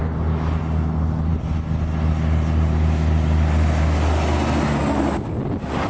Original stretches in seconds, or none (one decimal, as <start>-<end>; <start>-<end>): 0.0-5.9